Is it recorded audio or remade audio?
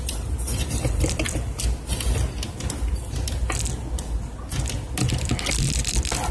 recorded